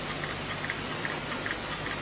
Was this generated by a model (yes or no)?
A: no